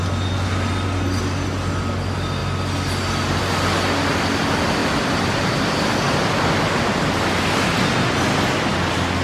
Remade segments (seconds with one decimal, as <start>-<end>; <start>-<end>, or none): 4.8-6.7